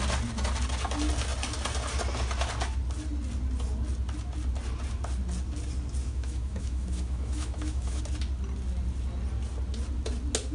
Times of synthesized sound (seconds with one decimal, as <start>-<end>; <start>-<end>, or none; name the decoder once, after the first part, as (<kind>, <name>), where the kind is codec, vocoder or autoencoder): 6.0-8.0 (autoencoder, DAC-VAE)